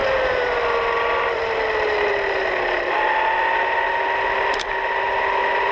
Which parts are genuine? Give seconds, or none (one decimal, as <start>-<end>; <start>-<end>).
0.0-5.7